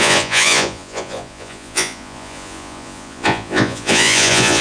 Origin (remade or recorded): remade